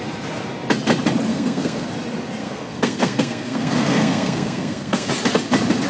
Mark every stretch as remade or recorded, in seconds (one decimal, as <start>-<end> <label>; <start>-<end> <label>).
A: 0.0-1.3 recorded; 1.3-1.9 remade; 1.9-2.4 recorded; 2.4-5.1 remade; 5.1-5.9 recorded